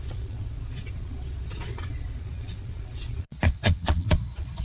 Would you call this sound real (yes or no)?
no